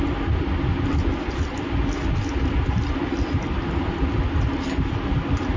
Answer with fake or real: real